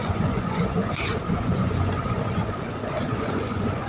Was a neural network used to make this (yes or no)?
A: yes